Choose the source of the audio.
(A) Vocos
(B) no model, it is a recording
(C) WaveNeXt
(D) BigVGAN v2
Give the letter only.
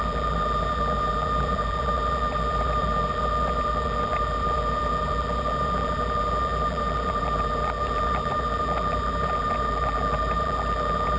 D